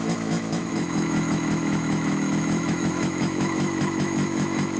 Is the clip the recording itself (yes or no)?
no